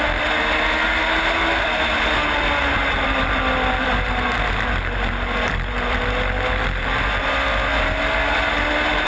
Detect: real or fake real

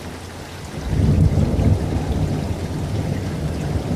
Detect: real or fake real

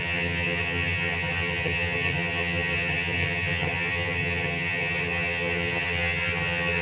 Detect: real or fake fake